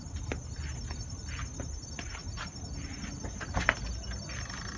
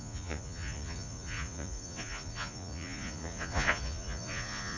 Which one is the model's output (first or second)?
second